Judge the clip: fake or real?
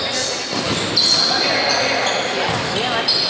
real